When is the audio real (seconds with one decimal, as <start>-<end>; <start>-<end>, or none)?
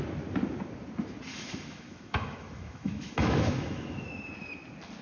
0.0-1.3; 4.3-5.0